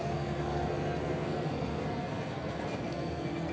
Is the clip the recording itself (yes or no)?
no